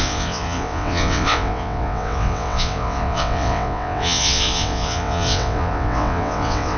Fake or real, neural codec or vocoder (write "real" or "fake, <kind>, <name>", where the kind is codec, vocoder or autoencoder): fake, vocoder, WaveNeXt